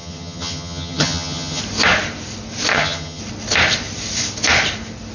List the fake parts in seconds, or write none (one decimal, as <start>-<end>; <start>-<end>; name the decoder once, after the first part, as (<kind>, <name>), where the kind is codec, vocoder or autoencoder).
0.0-1.6 (vocoder, HiFi-GAN); 2.7-3.2

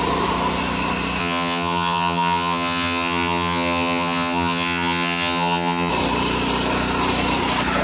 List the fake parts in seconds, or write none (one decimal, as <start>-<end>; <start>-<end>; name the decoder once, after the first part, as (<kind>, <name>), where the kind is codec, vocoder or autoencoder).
1.2-5.9 (vocoder, HiFi-GAN)

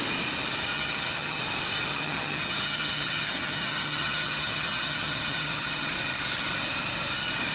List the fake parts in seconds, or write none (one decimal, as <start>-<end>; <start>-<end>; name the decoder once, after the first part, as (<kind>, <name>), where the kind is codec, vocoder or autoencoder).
0.7-1.4 (vocoder, HiFi-GAN); 1.9-5.9

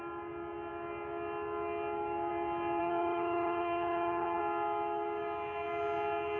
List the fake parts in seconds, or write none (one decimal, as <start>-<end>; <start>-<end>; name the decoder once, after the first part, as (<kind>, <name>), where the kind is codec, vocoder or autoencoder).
2.8-4.4 (vocoder, HiFi-GAN)

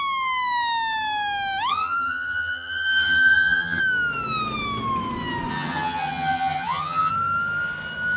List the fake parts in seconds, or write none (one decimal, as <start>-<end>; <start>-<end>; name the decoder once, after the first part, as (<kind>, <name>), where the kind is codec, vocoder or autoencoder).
1.7-3.8 (vocoder, HiFi-GAN); 5.5-7.1